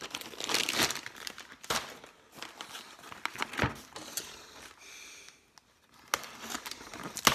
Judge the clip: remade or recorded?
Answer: recorded